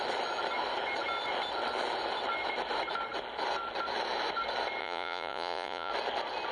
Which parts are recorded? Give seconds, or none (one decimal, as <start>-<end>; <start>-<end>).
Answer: 0.0-4.8; 5.9-6.5